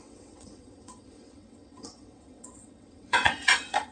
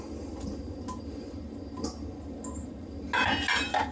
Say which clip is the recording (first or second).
second